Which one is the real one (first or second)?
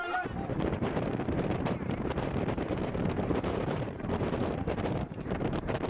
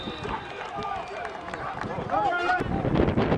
second